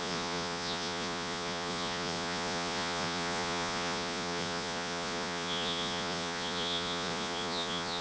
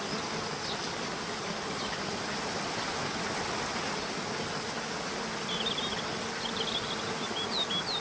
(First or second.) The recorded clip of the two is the second